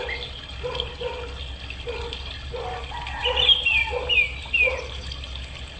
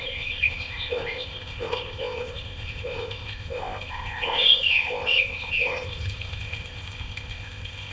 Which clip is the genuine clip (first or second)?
first